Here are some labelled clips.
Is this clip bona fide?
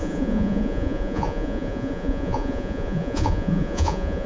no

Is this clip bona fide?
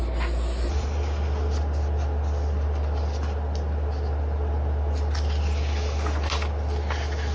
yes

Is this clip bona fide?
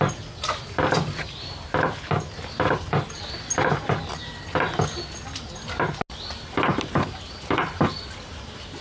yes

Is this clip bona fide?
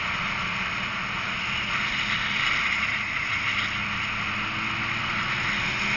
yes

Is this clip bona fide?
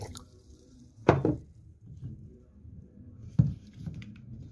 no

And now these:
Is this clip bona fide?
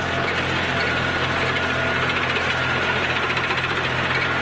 yes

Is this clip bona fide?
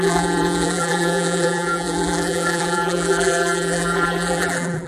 no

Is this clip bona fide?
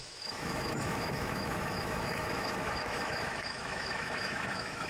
no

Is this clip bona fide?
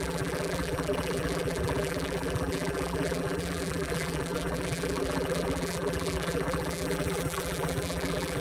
no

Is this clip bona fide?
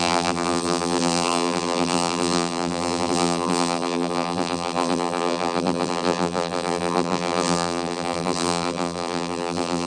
no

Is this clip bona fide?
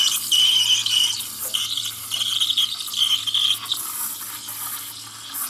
yes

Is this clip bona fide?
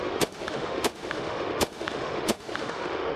no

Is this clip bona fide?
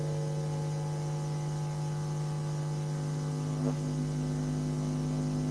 yes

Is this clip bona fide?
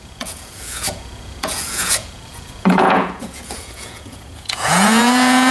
no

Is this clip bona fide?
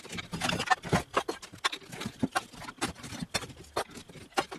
yes